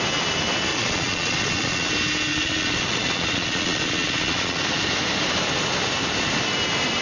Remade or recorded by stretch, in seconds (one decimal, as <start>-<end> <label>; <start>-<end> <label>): 0.0-0.7 recorded; 0.7-1.9 remade; 1.9-2.3 recorded; 2.3-4.6 remade; 4.6-7.0 recorded